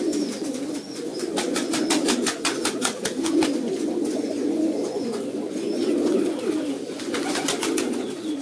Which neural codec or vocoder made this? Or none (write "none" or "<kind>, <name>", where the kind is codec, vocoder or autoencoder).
vocoder, Vocos